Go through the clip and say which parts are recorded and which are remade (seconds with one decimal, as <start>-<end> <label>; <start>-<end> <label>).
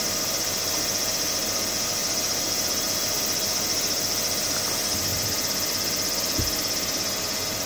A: 0.0-7.7 remade